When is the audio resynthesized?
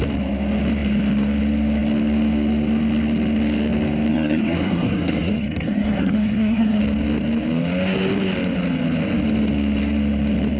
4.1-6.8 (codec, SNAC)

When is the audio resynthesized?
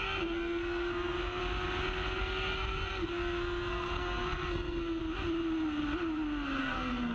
0.0-1.4 (codec, SNAC); 2.2-5.0; 6.6-7.1